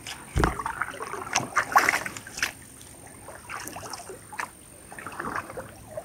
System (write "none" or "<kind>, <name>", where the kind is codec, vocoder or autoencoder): none